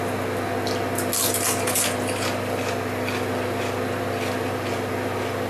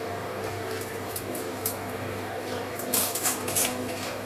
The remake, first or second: second